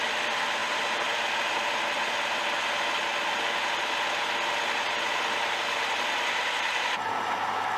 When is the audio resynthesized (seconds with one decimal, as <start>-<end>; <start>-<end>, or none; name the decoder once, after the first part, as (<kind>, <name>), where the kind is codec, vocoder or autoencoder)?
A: none